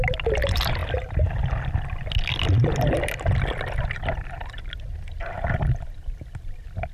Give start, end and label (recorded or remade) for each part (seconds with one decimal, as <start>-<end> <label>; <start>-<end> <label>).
0.0-6.9 recorded